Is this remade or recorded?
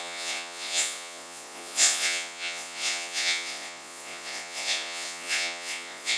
remade